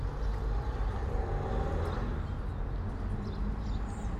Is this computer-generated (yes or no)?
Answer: no